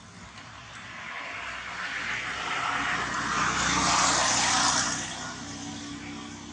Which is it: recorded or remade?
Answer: recorded